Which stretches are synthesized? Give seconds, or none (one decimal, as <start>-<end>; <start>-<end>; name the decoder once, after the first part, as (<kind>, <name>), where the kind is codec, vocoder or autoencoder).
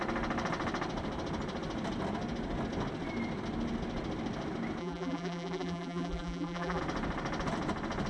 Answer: 4.8-6.8 (vocoder, BigVGAN v2)